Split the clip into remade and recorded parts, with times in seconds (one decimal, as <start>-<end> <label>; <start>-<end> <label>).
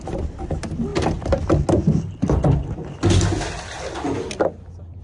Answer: 0.0-5.0 recorded